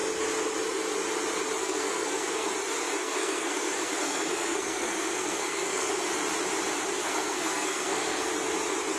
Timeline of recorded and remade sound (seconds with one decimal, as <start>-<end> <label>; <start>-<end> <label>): 0.0-1.6 recorded; 1.6-2.5 remade; 2.5-3.0 recorded; 3.0-5.9 remade; 5.9-7.0 recorded; 7.0-8.3 remade; 8.3-9.0 recorded